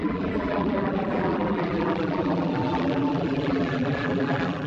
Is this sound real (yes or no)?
no